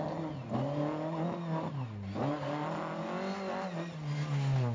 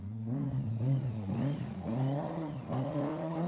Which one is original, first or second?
first